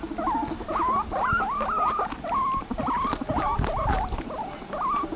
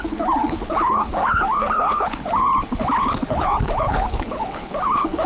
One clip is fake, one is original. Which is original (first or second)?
first